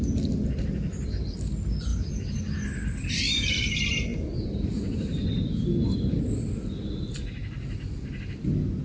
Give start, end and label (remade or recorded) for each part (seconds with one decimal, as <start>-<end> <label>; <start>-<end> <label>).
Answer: 0.0-8.8 recorded